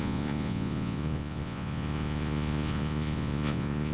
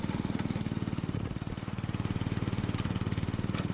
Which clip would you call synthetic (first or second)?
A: first